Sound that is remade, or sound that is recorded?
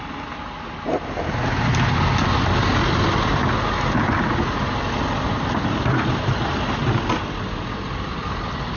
recorded